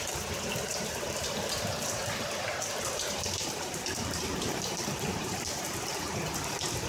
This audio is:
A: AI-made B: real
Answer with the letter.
A